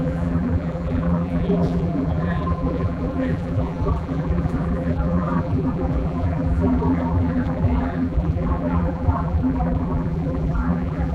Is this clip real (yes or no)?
no